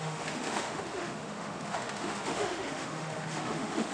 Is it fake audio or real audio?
fake